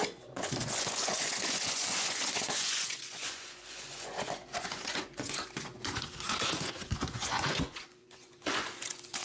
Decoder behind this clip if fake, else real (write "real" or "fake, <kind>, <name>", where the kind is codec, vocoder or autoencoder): fake, vocoder, Vocos